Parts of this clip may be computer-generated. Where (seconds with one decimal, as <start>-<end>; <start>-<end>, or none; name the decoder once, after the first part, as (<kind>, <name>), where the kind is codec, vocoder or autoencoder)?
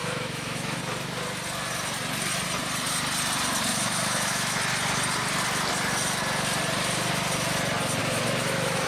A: 0.0-0.8 (autoencoder, DAC-VAE); 3.7-4.6; 8.0-8.9